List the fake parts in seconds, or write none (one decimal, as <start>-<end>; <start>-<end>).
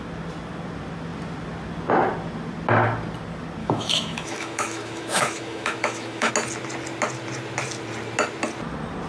3.6-6.3